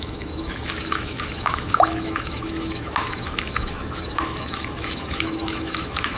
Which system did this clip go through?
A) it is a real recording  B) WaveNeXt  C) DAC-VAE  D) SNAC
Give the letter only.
C